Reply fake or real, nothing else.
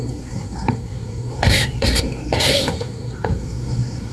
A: fake